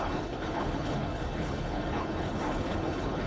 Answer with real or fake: fake